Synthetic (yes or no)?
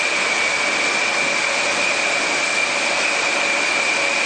no